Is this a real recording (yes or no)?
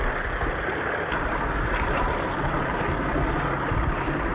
yes